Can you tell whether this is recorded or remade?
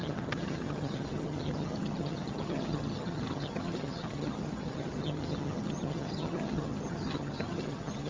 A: remade